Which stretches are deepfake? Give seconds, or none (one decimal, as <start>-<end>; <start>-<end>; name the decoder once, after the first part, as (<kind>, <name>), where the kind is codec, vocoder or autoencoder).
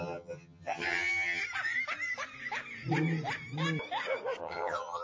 0.0-1.4 (vocoder, HiFi-GAN); 4.4-5.0